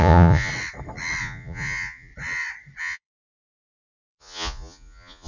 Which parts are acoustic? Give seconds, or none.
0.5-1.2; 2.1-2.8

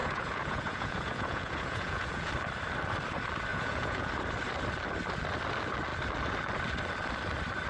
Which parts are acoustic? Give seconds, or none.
2.3-3.5; 4.1-7.7

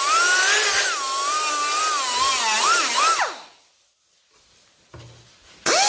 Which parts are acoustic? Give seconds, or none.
0.0-5.9

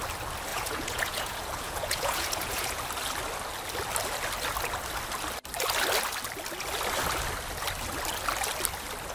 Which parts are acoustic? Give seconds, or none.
0.0-0.5; 2.8-9.1

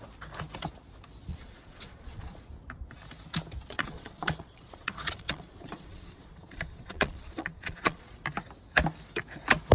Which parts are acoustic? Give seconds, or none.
0.0-1.3; 2.4-3.6; 8.1-9.7

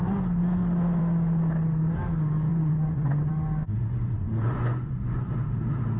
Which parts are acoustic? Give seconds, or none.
0.0-2.5; 3.1-3.6; 5.3-6.0

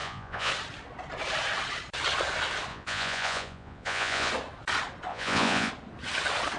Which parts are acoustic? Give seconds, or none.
0.5-2.7; 4.3-5.1; 5.7-6.6